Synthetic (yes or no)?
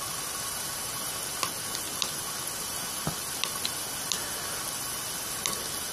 no